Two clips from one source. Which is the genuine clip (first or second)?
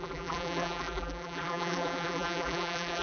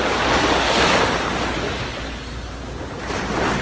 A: second